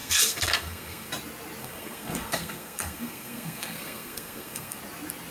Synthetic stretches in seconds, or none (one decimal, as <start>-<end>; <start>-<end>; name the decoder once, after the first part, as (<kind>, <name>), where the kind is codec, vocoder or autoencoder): 0.0-1.1 (codec, SNAC); 1.6-4.8